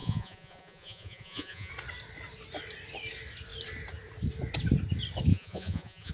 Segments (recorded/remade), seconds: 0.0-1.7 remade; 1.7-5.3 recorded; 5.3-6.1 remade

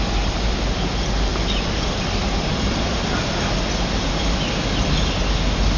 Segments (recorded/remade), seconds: 0.0-5.8 recorded

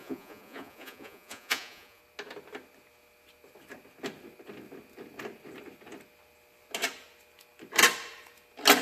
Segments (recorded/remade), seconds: 0.0-2.0 remade; 2.0-8.8 recorded

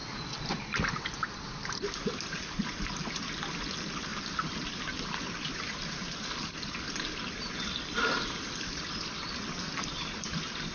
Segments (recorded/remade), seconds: 0.0-10.7 recorded

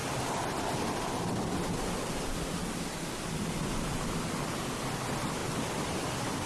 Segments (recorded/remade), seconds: 0.0-6.5 recorded

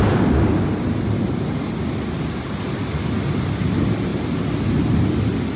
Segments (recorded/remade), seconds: 0.0-5.6 recorded

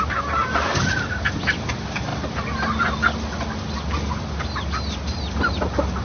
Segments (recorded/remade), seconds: 0.0-6.0 recorded